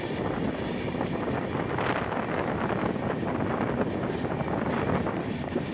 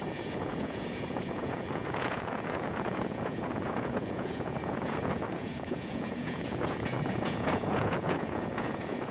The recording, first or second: first